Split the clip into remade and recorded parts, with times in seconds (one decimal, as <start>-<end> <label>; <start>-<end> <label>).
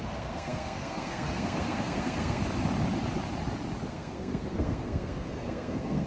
0.0-2.4 remade; 2.4-3.9 recorded; 3.9-6.1 remade